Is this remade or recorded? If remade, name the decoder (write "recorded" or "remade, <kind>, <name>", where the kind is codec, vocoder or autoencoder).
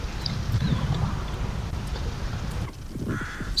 recorded